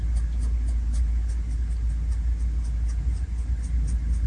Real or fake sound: real